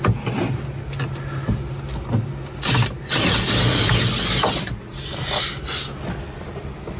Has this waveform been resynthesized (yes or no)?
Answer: no